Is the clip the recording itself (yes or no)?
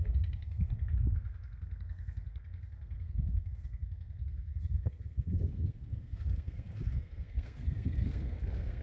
no